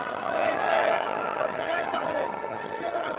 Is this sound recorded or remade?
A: remade